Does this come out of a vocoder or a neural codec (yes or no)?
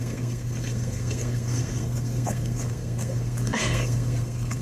yes